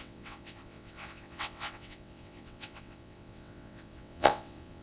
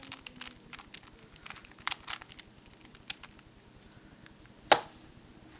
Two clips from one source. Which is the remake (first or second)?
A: first